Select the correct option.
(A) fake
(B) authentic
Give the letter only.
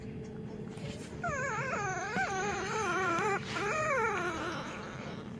A